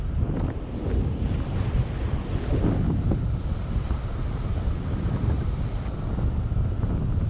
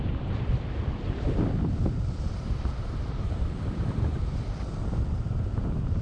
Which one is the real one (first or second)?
first